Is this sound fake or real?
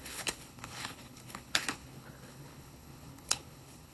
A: fake